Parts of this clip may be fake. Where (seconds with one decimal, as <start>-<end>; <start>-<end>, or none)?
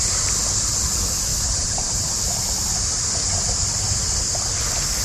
1.3-2.2